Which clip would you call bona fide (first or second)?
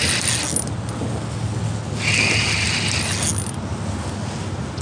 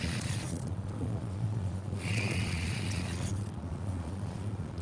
first